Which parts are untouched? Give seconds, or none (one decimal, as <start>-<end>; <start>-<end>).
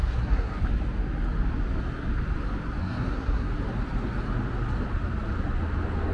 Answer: 0.6-2.8; 3.5-6.1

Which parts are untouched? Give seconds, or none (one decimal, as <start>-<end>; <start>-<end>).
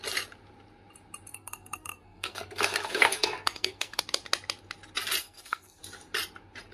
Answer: 0.0-1.3; 4.0-5.2; 5.8-6.7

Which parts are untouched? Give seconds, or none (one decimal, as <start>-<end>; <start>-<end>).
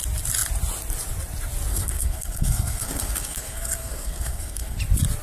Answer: 0.0-1.7; 4.8-5.2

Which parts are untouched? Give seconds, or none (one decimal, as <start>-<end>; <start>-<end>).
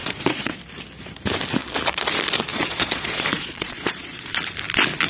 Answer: 0.6-2.5; 4.3-5.1